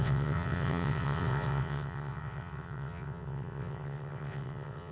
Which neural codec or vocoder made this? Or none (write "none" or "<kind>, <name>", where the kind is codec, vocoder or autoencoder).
vocoder, WaveNeXt